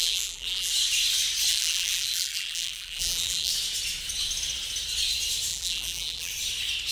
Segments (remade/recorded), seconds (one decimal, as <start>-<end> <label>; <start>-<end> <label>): 0.0-0.7 remade; 0.7-1.5 recorded; 1.5-3.5 remade; 3.5-5.5 recorded; 5.5-6.3 remade; 6.3-6.9 recorded